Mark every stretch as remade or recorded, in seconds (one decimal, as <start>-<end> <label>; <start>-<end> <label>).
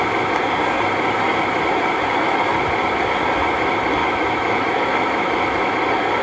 0.0-4.0 recorded; 4.0-5.7 remade; 5.7-6.2 recorded